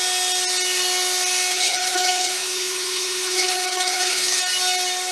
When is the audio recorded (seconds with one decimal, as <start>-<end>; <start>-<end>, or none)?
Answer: 0.0-1.5; 4.4-5.1